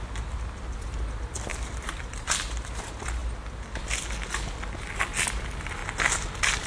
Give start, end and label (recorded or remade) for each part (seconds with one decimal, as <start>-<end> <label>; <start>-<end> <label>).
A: 0.0-1.5 recorded; 1.5-2.8 remade; 2.8-6.7 recorded